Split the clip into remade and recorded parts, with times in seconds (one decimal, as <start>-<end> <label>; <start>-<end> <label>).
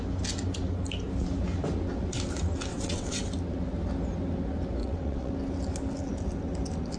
0.0-2.7 recorded; 2.7-3.2 remade; 3.2-4.8 recorded; 4.8-5.3 remade; 5.3-7.0 recorded